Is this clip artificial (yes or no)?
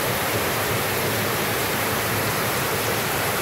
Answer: yes